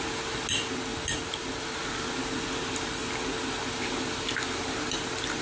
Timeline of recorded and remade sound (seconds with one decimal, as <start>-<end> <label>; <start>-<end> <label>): 0.0-5.4 recorded